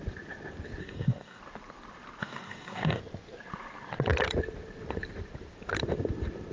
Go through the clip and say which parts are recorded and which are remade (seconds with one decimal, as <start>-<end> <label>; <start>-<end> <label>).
0.0-0.8 recorded; 0.8-1.4 remade; 1.4-2.2 recorded; 2.2-3.0 remade; 3.0-6.5 recorded